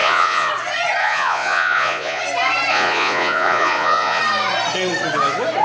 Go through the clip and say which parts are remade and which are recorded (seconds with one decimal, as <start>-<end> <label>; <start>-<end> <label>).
0.0-0.5 remade; 0.5-1.0 recorded; 1.0-2.2 remade; 2.2-2.7 recorded; 2.7-4.2 remade; 4.2-5.6 recorded

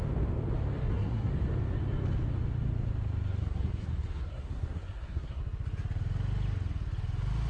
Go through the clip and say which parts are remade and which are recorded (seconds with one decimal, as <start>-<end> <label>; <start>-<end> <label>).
0.0-0.8 recorded; 0.8-1.3 remade; 1.3-3.4 recorded; 3.4-5.4 remade; 5.4-7.5 recorded

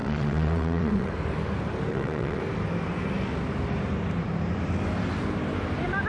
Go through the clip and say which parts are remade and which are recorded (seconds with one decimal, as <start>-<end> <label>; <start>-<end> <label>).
0.0-1.1 remade; 1.1-1.9 recorded; 1.9-2.4 remade; 2.4-6.1 recorded

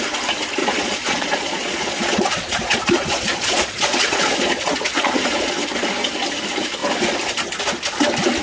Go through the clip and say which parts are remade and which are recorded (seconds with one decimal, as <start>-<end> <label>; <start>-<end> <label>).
0.0-0.6 recorded; 0.6-5.5 remade; 5.5-8.4 recorded

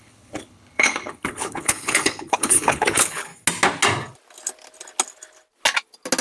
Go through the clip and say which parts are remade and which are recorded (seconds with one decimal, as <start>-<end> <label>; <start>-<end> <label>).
0.0-3.3 remade; 3.3-6.2 recorded

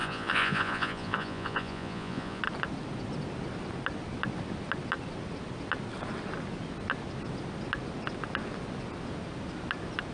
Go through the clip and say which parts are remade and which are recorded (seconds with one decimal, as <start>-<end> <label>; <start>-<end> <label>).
0.0-2.4 remade; 2.4-10.1 recorded